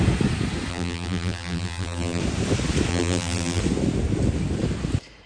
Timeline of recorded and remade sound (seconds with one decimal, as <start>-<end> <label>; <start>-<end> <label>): 0.0-0.7 recorded; 0.7-2.2 remade; 2.2-2.9 recorded; 2.9-3.6 remade; 3.6-5.3 recorded